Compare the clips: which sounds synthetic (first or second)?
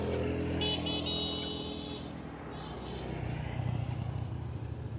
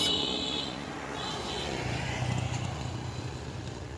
second